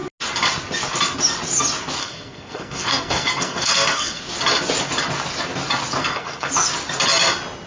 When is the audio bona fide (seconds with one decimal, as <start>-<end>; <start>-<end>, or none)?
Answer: 0.0-2.0; 4.2-6.0; 6.5-7.7